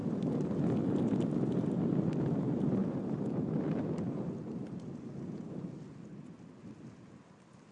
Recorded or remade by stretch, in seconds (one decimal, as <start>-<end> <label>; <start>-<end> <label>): 0.0-7.7 recorded